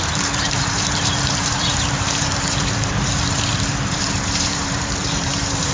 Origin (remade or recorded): remade